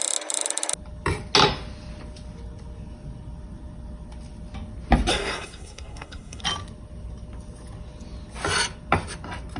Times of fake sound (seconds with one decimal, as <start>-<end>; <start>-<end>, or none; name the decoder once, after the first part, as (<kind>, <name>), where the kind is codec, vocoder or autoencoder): 5.1-6.4 (codec, SNAC)